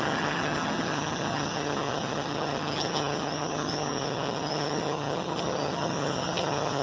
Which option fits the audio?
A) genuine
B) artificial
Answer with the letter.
B